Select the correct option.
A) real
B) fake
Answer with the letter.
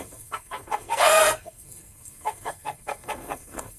B